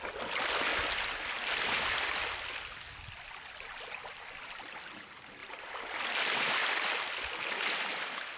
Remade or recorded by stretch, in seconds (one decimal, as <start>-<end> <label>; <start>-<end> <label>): 0.0-5.4 recorded; 5.4-6.0 remade; 6.0-8.4 recorded